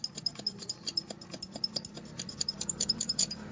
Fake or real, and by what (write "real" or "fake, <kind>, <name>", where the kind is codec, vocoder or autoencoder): real